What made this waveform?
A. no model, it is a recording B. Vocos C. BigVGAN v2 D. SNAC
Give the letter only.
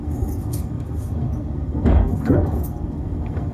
D